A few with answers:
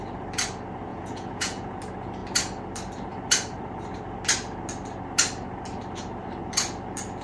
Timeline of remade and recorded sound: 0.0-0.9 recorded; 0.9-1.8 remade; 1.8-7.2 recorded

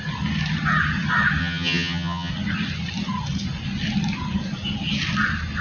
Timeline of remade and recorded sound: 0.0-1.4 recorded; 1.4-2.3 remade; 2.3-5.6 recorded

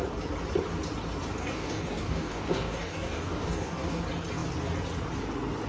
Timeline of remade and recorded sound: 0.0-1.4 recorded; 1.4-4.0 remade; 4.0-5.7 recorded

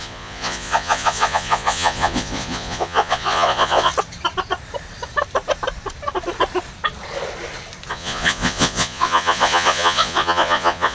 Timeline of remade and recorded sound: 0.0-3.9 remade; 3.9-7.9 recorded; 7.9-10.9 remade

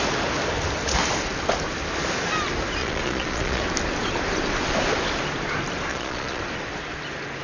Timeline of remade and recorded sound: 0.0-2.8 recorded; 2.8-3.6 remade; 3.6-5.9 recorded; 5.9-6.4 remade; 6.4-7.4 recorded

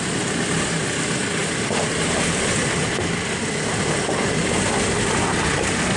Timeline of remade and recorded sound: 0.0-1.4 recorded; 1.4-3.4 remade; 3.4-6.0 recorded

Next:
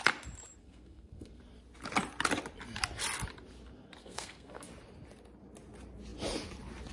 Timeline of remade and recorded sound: 0.0-0.6 recorded; 0.6-1.4 remade; 1.4-4.0 recorded; 4.0-4.7 remade; 4.7-6.9 recorded